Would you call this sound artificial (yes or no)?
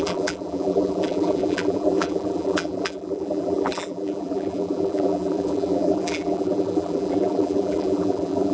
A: yes